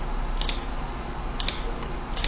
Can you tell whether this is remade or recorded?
recorded